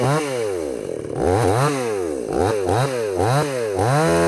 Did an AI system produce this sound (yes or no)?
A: no